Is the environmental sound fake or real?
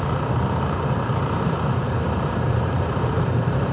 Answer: fake